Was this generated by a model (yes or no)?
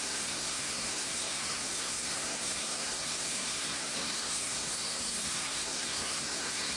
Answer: yes